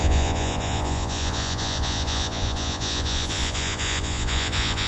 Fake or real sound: fake